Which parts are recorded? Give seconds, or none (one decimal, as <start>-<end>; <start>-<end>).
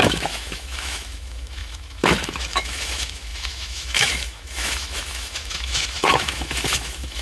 none